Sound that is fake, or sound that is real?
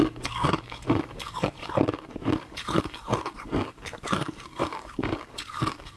fake